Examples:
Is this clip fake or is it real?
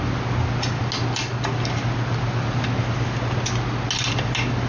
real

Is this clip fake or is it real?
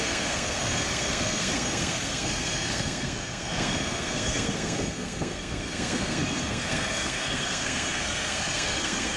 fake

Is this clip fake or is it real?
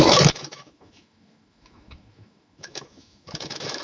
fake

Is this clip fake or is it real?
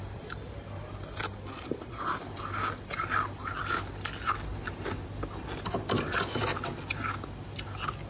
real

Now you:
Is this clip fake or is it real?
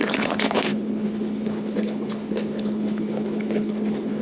fake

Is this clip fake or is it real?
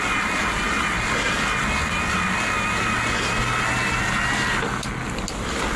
real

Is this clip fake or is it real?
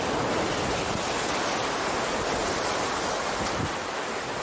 real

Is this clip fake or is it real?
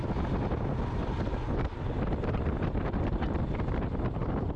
fake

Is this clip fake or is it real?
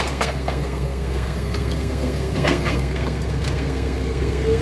fake